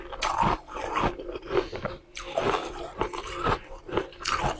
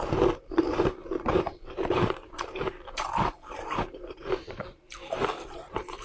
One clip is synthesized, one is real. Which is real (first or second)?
first